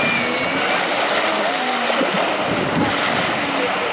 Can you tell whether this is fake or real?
real